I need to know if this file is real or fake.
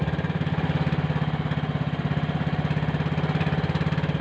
real